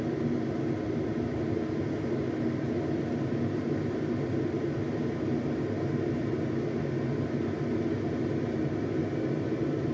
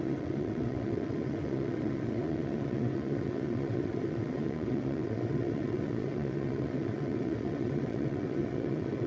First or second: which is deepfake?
second